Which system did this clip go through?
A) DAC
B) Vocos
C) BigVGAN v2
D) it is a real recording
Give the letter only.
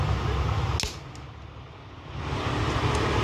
D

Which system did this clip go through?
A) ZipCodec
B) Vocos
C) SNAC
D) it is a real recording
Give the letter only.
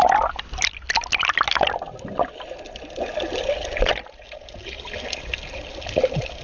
D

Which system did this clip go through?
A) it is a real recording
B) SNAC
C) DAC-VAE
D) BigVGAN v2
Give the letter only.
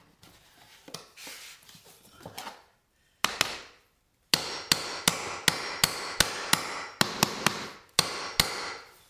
A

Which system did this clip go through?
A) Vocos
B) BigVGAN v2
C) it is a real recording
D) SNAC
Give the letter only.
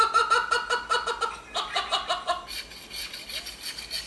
C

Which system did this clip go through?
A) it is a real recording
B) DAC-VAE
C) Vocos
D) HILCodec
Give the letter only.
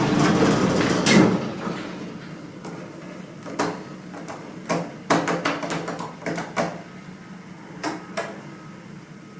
A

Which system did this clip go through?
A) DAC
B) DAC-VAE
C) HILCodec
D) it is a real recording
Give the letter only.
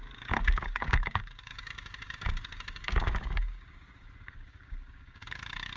A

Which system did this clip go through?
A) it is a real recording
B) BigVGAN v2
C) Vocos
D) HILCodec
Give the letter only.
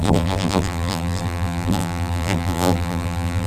B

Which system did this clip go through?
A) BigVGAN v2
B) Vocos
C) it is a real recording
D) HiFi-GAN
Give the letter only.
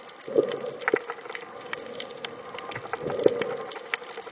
C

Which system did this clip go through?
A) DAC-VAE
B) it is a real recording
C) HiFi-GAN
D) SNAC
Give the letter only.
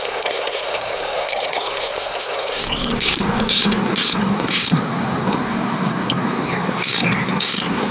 D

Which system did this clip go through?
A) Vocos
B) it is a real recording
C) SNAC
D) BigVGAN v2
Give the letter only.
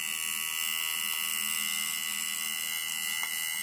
B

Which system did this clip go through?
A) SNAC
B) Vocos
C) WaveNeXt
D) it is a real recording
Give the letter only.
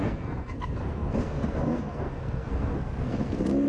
A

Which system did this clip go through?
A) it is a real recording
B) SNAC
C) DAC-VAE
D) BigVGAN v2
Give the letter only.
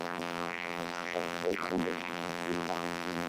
D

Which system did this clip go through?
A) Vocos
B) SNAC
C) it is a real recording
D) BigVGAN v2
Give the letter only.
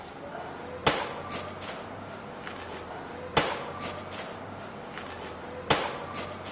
C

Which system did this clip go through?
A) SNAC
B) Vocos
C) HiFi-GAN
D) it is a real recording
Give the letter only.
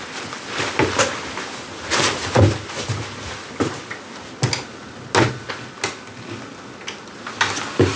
D